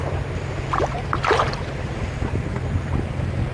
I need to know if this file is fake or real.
real